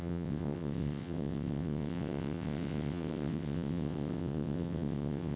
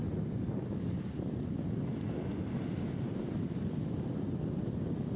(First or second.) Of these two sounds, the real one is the second